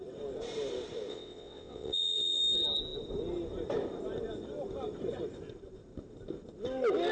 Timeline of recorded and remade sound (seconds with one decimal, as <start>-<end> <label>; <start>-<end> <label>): 0.0-1.1 recorded; 1.1-2.4 remade; 2.4-7.1 recorded